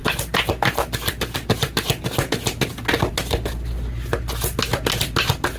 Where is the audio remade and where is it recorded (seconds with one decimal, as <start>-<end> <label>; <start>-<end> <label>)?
0.0-5.6 recorded